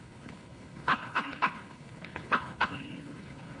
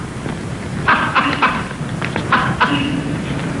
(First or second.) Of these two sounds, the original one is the second